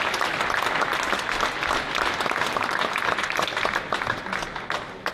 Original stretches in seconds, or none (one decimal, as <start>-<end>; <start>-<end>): 0.0-5.1